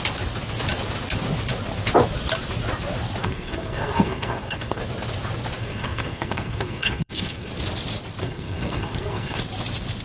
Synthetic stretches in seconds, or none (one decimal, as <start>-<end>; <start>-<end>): 3.2-4.8; 5.6-7.5; 8.2-9.4